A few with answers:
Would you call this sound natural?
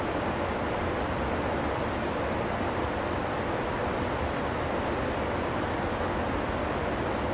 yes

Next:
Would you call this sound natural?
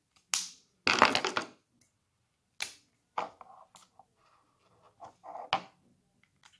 yes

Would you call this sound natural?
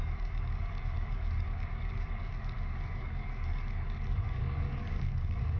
no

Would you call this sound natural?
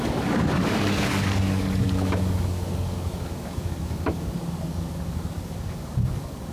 no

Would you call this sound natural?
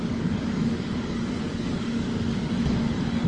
no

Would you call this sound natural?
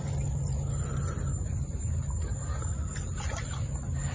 yes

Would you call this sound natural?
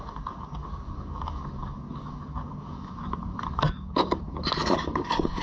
no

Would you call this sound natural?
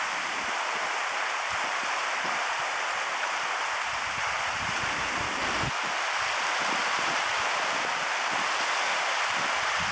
yes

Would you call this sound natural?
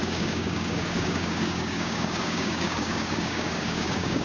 no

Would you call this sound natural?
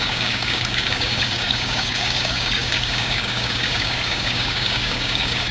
no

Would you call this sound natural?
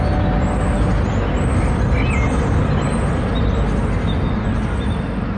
yes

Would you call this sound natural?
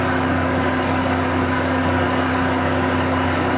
no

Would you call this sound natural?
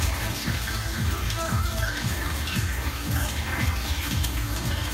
no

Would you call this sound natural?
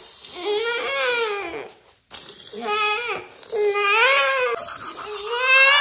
yes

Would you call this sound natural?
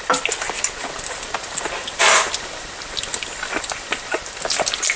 yes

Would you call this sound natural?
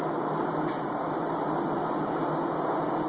yes